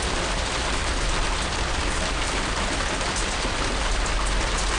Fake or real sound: real